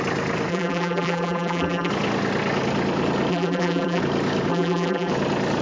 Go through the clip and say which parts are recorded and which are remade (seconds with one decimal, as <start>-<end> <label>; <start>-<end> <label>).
0.0-0.5 recorded; 0.5-1.9 remade; 1.9-3.3 recorded; 3.3-4.0 remade; 4.0-4.5 recorded; 4.5-5.1 remade; 5.1-5.6 recorded